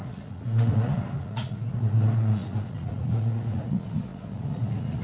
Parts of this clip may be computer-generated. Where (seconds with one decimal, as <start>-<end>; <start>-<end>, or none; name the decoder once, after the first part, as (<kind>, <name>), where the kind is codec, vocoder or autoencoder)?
0.0-5.0 (vocoder, Vocos)